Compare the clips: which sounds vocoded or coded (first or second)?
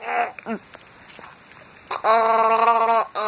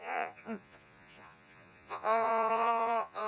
second